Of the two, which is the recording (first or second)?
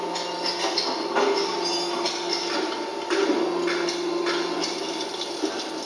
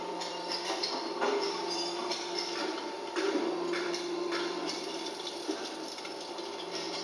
first